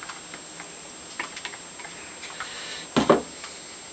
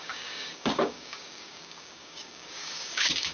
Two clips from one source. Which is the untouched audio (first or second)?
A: first